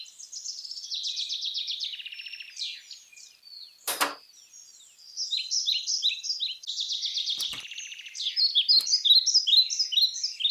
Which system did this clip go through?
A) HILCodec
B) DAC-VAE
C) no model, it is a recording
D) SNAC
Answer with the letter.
C